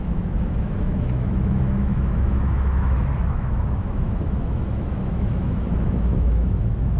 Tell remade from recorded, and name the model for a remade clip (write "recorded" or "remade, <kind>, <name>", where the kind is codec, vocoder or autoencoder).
remade, autoencoder, DAC-VAE